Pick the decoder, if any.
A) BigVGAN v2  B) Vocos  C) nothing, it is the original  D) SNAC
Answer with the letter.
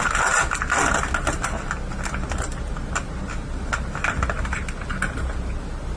C